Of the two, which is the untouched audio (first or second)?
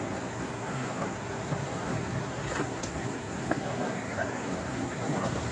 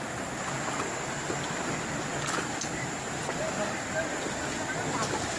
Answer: second